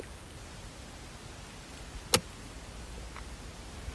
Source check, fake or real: real